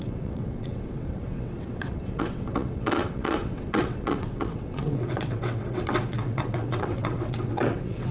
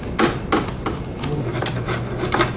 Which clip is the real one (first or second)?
second